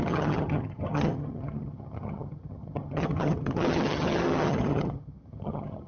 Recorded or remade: remade